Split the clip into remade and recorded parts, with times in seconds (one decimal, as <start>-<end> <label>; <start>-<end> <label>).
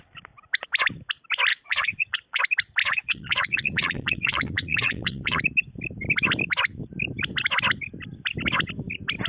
0.0-1.5 recorded; 1.5-2.4 remade; 2.4-2.8 recorded; 2.8-5.4 remade; 5.4-9.3 recorded